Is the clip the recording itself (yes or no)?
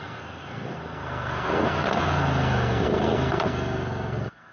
no